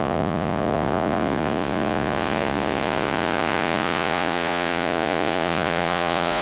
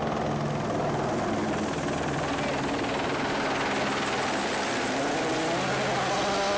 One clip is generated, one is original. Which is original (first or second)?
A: second